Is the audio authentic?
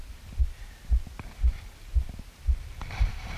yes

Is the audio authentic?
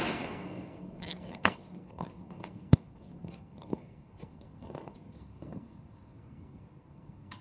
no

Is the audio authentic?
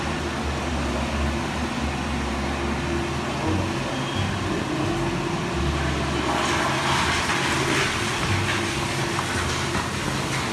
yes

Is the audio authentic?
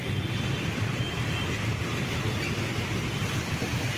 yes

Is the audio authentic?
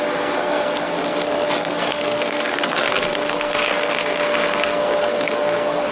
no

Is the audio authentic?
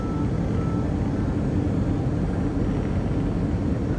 yes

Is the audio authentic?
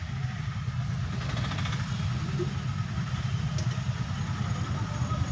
yes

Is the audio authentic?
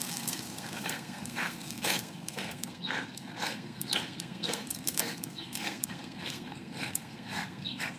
no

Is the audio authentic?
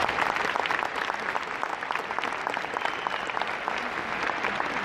yes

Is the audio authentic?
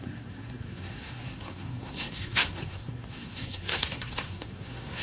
no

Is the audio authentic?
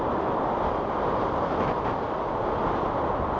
yes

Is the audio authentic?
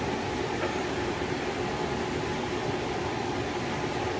yes